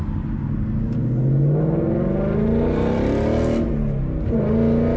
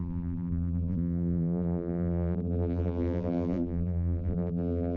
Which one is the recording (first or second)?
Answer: first